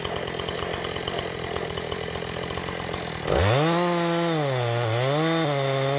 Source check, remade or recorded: recorded